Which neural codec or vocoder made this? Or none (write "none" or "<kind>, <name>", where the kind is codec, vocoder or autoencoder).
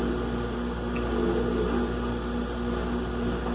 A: none